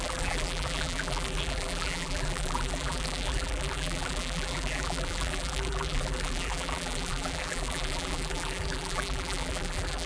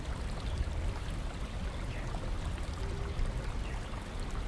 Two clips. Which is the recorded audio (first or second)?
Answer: second